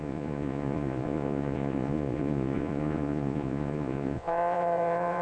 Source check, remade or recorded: remade